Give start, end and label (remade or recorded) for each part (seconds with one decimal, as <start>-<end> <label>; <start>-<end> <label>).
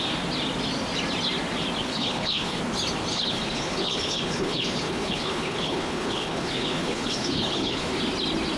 0.0-1.8 recorded; 1.8-2.6 remade; 2.6-3.1 recorded; 3.1-8.0 remade; 8.0-8.6 recorded